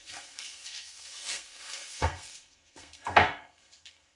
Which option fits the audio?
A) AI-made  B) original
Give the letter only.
A